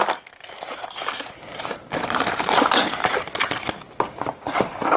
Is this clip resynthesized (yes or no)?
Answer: no